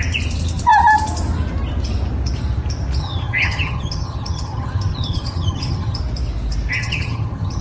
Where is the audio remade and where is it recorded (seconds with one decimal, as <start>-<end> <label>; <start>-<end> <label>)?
0.0-3.0 recorded; 3.0-6.0 remade; 6.0-6.7 recorded; 6.7-7.6 remade